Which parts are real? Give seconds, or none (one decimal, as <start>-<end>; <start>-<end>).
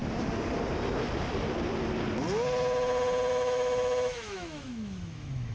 0.0-3.3